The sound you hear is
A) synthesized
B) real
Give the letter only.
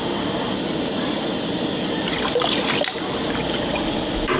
B